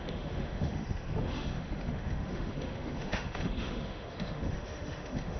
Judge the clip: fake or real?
fake